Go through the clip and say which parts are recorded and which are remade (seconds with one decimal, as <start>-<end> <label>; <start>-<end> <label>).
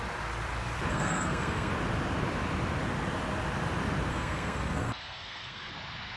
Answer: 0.0-0.9 recorded; 0.9-1.7 remade; 1.7-4.1 recorded; 4.1-5.7 remade; 5.7-6.2 recorded